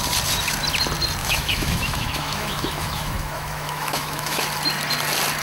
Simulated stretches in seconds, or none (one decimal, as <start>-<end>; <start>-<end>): 1.2-4.4

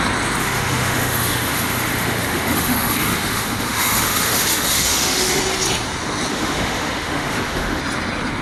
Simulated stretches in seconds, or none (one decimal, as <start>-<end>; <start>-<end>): 0.4-5.4; 6.3-7.8

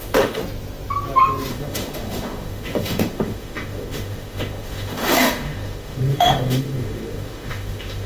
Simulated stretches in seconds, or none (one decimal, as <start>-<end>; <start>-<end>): 0.0-0.4; 1.5-8.1